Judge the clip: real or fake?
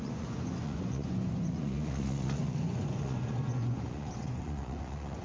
fake